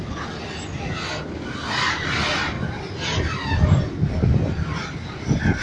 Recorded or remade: recorded